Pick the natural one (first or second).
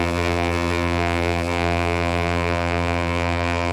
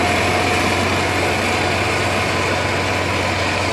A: second